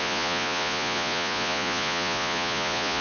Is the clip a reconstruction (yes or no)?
yes